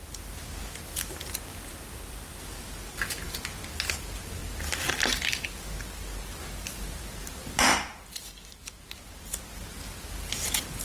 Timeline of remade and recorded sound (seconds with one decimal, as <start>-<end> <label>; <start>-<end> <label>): 0.0-1.5 recorded; 1.5-3.6 remade; 3.6-10.8 recorded